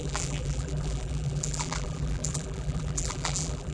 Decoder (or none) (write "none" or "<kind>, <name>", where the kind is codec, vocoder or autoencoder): vocoder, BigVGAN v2